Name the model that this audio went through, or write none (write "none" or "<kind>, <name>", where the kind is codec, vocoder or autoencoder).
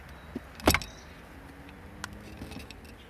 none